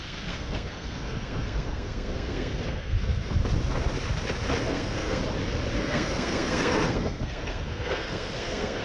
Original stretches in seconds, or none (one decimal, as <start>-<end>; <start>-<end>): 3.4-4.7; 5.2-5.8